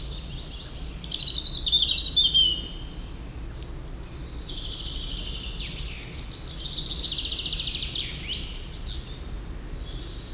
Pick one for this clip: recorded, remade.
recorded